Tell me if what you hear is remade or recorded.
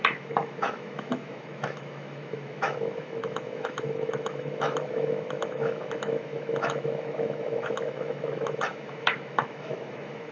remade